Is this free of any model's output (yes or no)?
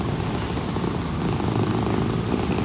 yes